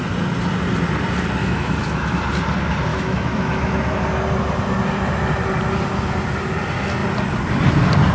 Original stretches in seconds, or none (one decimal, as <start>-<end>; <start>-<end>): 0.0-1.4; 2.2-2.9; 4.0-8.1